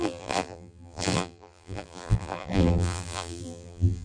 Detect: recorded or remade remade